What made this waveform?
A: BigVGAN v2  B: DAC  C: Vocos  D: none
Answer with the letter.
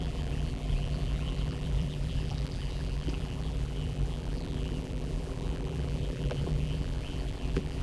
A